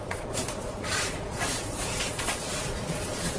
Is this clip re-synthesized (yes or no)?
yes